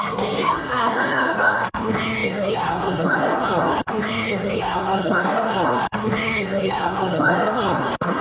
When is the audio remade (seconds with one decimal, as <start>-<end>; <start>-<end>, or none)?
0.0-8.2